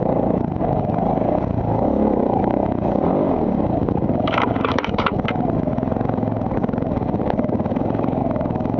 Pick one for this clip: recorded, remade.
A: remade